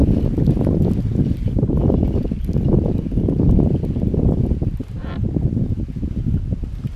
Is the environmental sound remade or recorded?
recorded